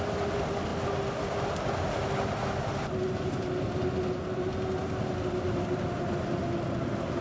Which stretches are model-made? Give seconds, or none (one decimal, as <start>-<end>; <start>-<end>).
none